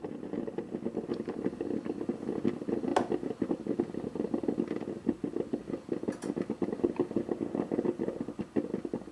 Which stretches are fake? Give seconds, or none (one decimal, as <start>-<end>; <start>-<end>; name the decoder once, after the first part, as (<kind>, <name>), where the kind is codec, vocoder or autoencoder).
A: 1.1-1.6 (vocoder, BigVGAN v2)